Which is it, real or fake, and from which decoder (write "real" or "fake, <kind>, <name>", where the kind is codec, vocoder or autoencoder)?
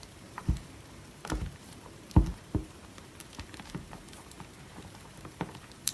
fake, vocoder, BigVGAN v2